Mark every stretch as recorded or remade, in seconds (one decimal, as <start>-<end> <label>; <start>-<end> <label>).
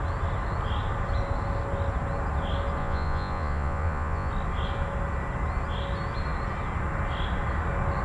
0.0-2.8 recorded; 2.8-4.3 remade; 4.3-8.0 recorded